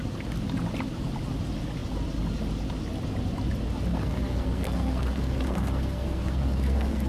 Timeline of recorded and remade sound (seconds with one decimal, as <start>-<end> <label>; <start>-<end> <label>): 0.0-3.9 recorded; 3.9-7.1 remade

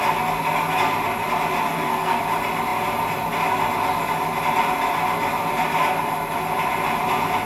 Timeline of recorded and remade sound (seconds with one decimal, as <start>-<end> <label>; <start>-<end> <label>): 0.0-1.7 recorded; 1.7-2.2 remade; 2.2-7.5 recorded

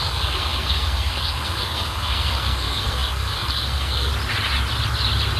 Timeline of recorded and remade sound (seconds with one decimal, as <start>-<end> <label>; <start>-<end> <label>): 0.0-4.1 remade; 4.1-5.4 recorded

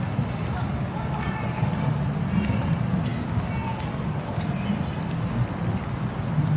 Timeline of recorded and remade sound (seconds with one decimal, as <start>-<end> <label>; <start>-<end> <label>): 0.0-6.6 recorded

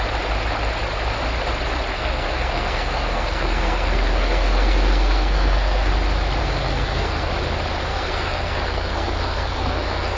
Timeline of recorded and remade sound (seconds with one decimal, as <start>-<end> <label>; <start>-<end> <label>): 0.0-1.9 recorded; 1.9-5.9 remade; 5.9-6.4 recorded; 6.4-7.3 remade; 7.3-7.9 recorded; 7.9-10.2 remade

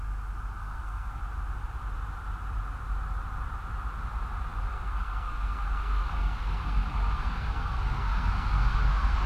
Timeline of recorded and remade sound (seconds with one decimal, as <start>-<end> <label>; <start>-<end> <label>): 0.0-0.6 recorded; 0.6-1.2 remade; 1.2-4.7 recorded; 4.7-9.3 remade

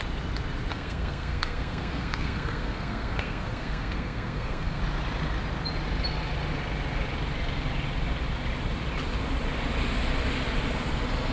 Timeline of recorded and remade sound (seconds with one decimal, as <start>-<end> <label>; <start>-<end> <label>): 0.0-0.7 recorded; 0.7-4.8 remade; 4.8-11.3 recorded

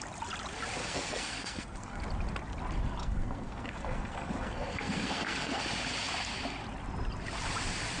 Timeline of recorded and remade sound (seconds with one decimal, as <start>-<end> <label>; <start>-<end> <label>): 0.0-0.8 recorded; 0.8-2.0 remade; 2.0-3.0 recorded; 3.0-5.6 remade; 5.6-8.0 recorded